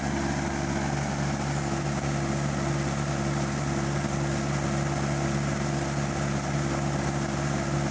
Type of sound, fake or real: real